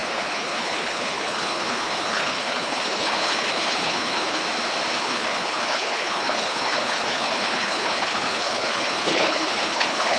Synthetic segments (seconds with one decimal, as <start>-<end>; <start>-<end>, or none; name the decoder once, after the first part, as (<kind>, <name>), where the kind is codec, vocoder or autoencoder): 0.0-4.4 (codec, HILCodec); 5.0-10.2